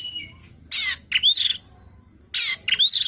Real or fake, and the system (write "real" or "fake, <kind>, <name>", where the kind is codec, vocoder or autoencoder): real